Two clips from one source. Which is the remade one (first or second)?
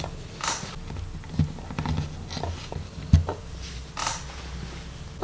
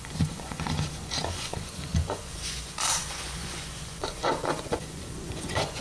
second